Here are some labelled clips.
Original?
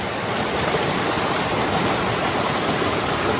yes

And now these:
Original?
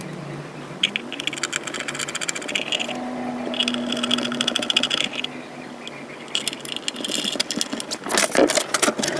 yes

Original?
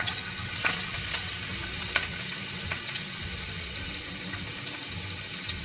no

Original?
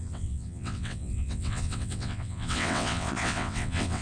no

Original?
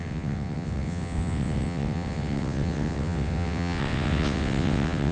no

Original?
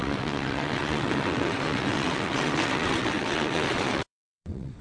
no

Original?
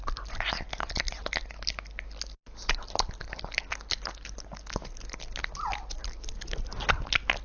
yes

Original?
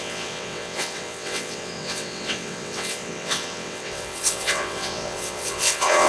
no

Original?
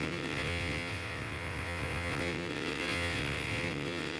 no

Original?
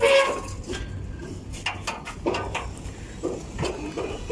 yes